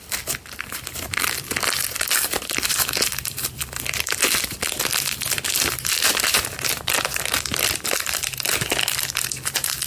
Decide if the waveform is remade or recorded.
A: remade